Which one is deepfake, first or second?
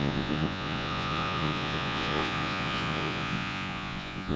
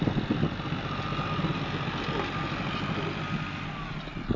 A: first